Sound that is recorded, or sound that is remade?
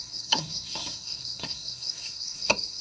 remade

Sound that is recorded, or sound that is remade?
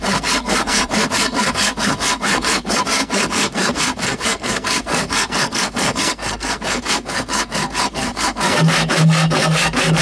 remade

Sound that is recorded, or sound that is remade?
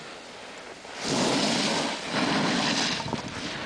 recorded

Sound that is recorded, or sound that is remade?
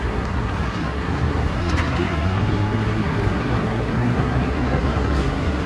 remade